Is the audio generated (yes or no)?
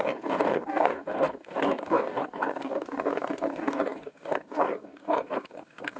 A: yes